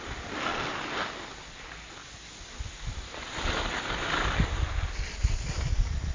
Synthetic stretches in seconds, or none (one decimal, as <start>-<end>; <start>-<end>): none